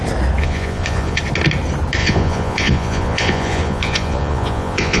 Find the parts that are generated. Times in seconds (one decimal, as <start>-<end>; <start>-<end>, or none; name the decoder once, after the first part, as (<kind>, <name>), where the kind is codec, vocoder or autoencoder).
0.4-1.2 (vocoder, Vocos); 2.0-5.0